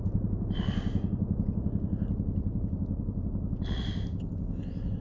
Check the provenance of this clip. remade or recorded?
recorded